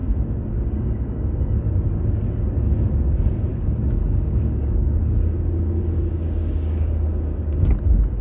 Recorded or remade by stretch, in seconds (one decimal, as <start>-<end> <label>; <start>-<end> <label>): 0.0-1.4 remade; 1.4-3.5 recorded; 3.5-7.7 remade; 7.7-8.2 recorded

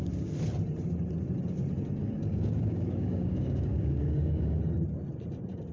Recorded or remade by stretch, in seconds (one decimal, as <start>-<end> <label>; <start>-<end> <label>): 0.0-2.0 recorded; 2.0-4.6 remade; 4.6-5.7 recorded

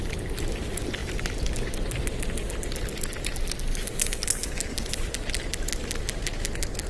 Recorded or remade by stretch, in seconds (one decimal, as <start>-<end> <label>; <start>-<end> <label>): 0.0-3.7 recorded; 3.7-4.9 remade; 4.9-6.9 recorded

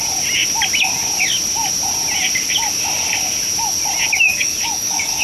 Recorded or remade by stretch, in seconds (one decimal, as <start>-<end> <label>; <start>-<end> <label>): 0.0-4.3 recorded; 4.3-5.2 remade

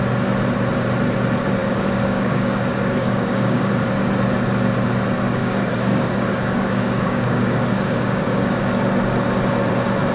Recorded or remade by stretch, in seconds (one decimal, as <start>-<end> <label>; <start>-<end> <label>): 0.0-1.6 recorded; 1.6-3.7 remade; 3.7-5.4 recorded; 5.4-8.6 remade; 8.6-10.1 recorded

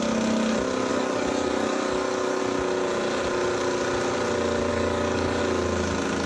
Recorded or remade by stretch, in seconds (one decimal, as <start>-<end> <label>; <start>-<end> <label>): 0.0-0.9 recorded; 0.9-2.4 remade; 2.4-4.7 recorded; 4.7-5.4 remade; 5.4-6.3 recorded

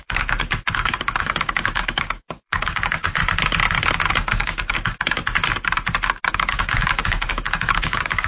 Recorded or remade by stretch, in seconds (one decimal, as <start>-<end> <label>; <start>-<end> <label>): 0.0-3.2 remade; 3.2-4.1 recorded; 4.1-5.2 remade; 5.2-6.3 recorded; 6.3-8.3 remade

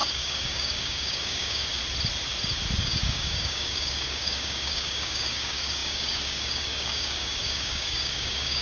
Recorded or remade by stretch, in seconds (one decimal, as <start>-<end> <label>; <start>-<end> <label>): 0.0-1.8 remade; 1.8-2.8 recorded; 2.8-8.6 remade